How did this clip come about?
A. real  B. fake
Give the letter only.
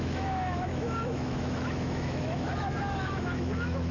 B